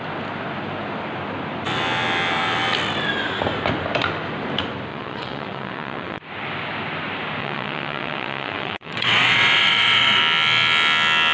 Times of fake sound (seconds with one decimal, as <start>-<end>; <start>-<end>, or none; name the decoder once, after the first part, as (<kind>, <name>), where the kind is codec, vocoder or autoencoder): 4.9-6.2 (vocoder, WaveNeXt); 7.4-10.2